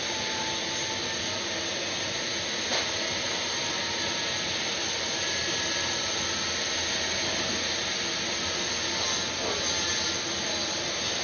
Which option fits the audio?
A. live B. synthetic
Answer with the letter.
A